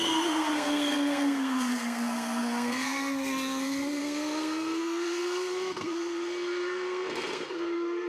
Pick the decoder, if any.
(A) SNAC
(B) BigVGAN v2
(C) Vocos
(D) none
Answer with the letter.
A